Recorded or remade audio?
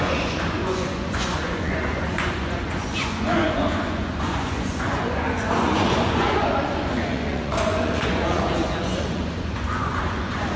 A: remade